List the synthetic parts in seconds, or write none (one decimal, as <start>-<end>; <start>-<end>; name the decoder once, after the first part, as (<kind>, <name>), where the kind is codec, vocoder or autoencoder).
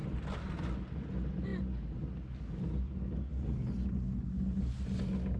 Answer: none